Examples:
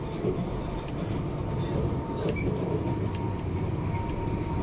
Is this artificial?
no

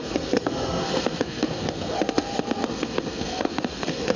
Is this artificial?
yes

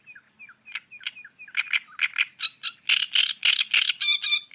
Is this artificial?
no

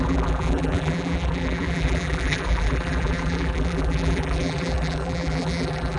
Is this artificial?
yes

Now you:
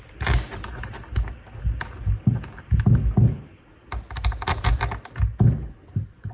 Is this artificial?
no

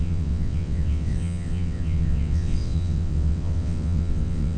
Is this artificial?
yes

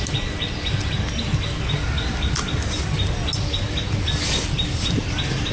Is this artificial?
no